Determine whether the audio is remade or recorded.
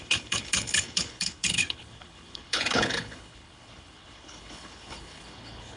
remade